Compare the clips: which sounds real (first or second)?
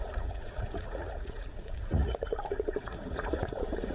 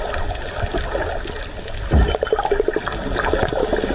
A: second